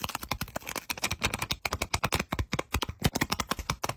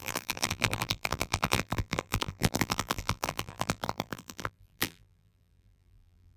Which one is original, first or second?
first